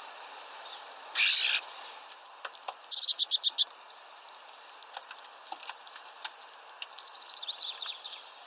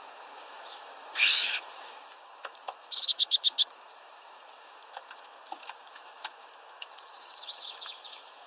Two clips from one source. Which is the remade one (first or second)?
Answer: second